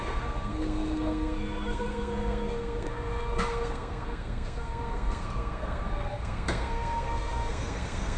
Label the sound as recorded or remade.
remade